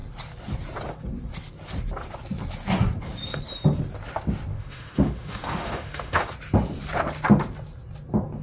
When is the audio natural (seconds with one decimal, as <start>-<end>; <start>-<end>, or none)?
0.0-4.5; 6.3-8.4